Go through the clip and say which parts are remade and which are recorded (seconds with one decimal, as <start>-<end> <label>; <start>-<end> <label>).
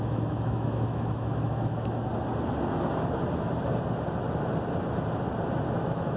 0.0-2.1 remade; 2.1-5.8 recorded; 5.8-6.2 remade